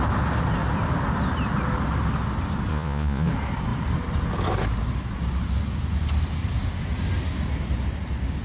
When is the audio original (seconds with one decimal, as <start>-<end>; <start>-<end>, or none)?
0.0-2.7; 3.3-8.4